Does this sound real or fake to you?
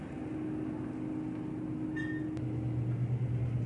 real